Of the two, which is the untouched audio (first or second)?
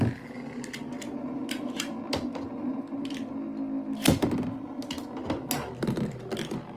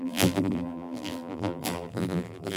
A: first